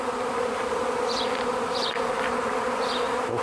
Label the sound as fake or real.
fake